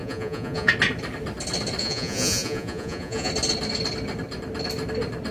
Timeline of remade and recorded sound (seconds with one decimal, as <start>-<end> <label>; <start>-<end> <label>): 0.0-0.7 remade; 0.7-1.8 recorded; 1.8-3.3 remade; 3.3-5.3 recorded